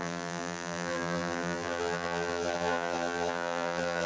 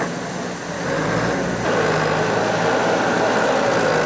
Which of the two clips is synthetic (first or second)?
first